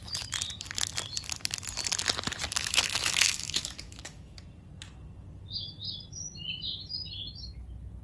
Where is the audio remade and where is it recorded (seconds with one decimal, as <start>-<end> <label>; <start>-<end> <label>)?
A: 0.0-2.6 recorded; 2.6-4.4 remade; 4.4-8.0 recorded